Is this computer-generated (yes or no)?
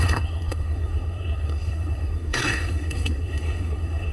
yes